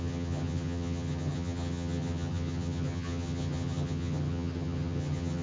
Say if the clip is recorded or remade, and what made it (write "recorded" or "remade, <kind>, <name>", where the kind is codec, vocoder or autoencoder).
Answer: remade, vocoder, HiFi-GAN